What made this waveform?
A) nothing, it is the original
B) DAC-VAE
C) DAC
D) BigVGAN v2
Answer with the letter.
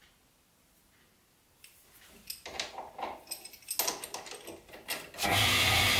A